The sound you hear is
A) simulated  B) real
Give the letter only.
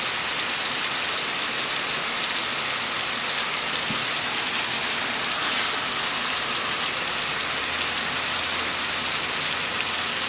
B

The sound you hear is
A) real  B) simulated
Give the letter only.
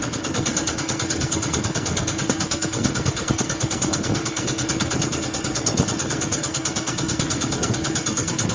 B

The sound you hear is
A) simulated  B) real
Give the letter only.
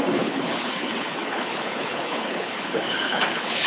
A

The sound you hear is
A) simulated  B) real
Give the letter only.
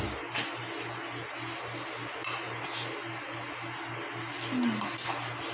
B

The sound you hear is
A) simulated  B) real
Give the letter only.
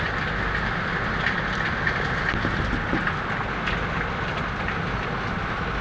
B